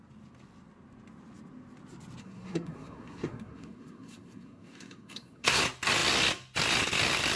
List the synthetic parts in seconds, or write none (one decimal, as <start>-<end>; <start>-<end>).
2.2-5.6